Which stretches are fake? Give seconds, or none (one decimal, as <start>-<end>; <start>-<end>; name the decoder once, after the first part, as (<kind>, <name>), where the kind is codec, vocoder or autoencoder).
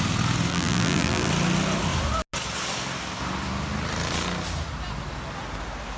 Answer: 0.5-1.3 (vocoder, BigVGAN v2)